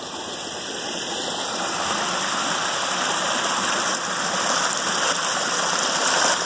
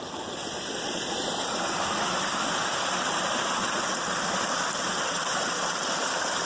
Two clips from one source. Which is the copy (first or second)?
second